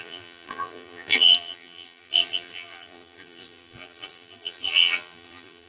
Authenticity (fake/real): fake